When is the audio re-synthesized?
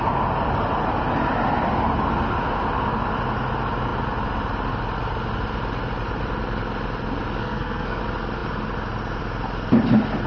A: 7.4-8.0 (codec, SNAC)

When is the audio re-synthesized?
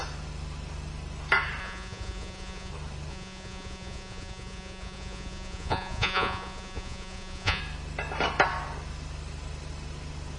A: 1.6-2.7 (vocoder, Vocos); 3.1-7.6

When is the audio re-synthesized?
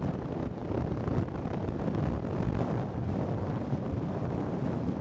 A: 0.0-5.0 (vocoder, BigVGAN v2)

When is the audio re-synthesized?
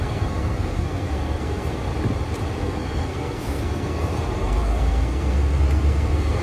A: 0.0-1.9 (codec, SNAC); 2.6-6.4